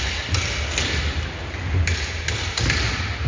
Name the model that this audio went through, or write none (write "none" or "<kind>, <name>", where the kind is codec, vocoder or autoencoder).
none